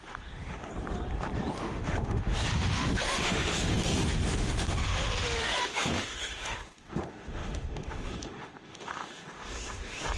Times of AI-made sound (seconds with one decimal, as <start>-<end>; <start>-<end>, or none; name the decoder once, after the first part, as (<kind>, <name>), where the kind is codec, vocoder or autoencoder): 0.0-0.7 (autoencoder, DAC-VAE); 1.6-10.2